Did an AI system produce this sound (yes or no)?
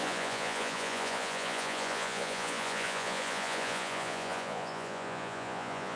yes